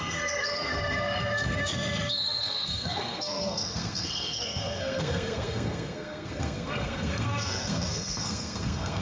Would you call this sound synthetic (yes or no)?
yes